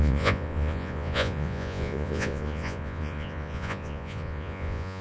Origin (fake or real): fake